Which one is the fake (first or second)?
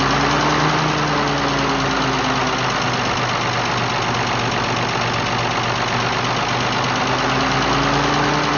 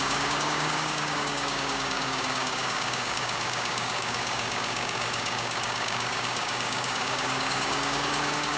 second